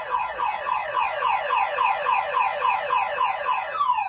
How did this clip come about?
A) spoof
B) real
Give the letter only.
B